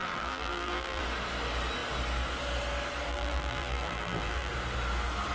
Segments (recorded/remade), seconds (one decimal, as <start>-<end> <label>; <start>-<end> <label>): 0.0-1.0 remade; 1.0-3.1 recorded; 3.1-4.5 remade; 4.5-5.3 recorded